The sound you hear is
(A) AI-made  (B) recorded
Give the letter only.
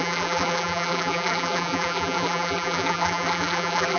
A